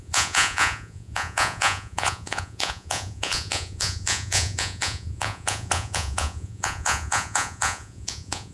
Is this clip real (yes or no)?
no